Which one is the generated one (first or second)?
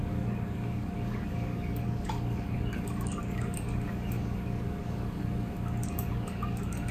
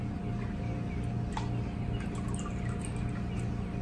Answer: first